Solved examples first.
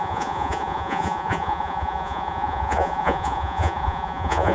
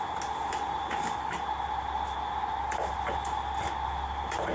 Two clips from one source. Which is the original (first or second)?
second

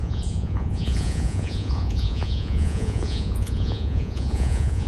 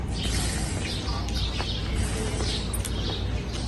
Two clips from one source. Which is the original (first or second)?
second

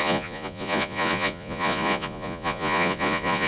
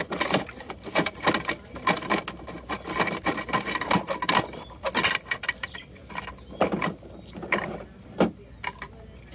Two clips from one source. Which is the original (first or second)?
second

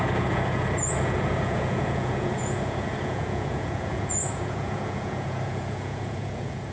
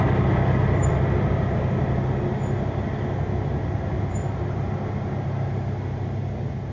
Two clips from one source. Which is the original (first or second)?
second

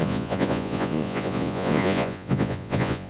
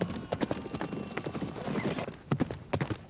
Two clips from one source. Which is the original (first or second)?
second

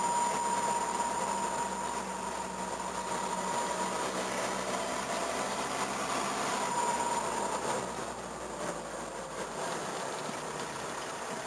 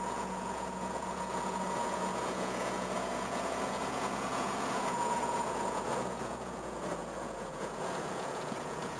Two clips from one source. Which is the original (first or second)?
first